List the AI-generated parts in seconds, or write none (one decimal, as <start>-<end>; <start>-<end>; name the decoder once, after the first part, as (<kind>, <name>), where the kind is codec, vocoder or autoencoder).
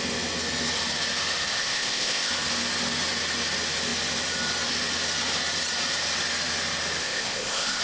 1.5-2.3 (codec, ZipCodec); 7.0-7.8